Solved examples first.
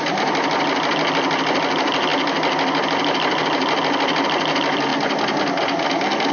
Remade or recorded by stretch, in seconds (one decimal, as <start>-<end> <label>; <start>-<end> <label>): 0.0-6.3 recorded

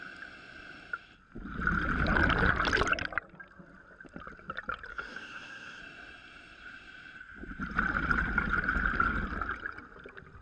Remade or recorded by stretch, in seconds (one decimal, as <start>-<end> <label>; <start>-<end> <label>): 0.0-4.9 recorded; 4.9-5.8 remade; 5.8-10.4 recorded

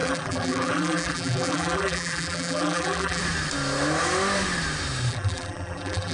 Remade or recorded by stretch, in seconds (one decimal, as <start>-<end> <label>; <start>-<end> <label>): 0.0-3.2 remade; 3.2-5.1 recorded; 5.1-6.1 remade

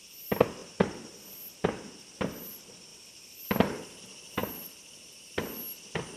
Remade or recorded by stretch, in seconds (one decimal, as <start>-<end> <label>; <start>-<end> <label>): 0.0-2.9 recorded; 2.9-4.0 remade; 4.0-4.4 recorded; 4.4-5.3 remade; 5.3-6.2 recorded

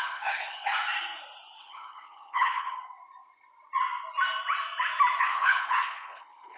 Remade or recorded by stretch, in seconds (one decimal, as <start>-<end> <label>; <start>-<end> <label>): 0.0-0.7 remade; 0.7-1.6 recorded; 1.6-2.8 remade; 2.8-5.2 recorded; 5.2-6.6 remade

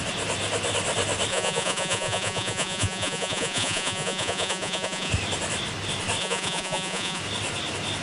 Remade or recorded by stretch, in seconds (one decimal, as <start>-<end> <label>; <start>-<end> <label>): 0.0-1.3 recorded; 1.3-5.1 remade; 5.1-6.2 recorded; 6.2-7.2 remade; 7.2-8.0 recorded

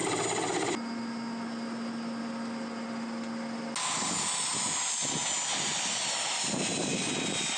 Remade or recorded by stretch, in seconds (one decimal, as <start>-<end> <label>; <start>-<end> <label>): 0.0-7.6 recorded

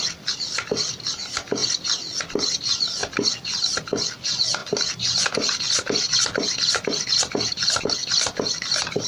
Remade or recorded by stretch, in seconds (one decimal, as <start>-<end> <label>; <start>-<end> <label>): 0.0-9.1 recorded